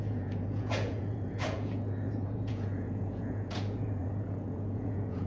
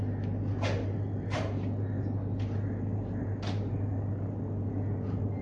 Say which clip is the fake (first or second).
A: first